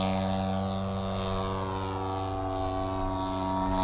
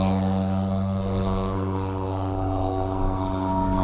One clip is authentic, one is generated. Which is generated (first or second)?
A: second